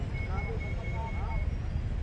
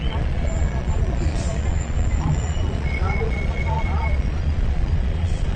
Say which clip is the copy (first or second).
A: second